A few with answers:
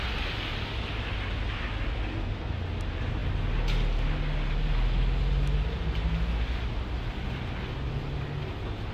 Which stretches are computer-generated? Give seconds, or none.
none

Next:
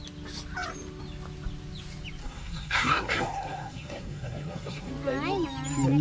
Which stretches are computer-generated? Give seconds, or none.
2.2-4.9 (codec, SNAC)

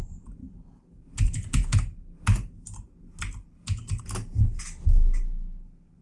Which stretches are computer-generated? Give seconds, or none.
none

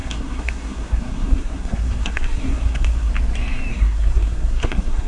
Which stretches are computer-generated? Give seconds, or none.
0.0-3.1 (codec, SNAC); 3.7-5.1